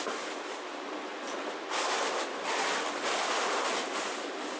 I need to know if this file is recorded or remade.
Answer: recorded